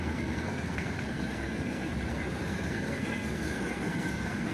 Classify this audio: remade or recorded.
remade